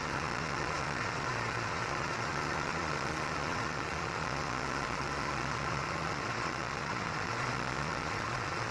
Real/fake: fake